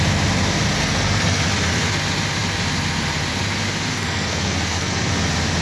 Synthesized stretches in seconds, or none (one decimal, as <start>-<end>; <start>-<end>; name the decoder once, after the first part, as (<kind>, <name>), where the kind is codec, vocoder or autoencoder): 0.8-1.4 (codec, SNAC); 3.9-5.1